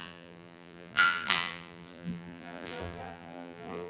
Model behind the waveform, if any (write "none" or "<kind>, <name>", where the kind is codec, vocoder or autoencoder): vocoder, BigVGAN v2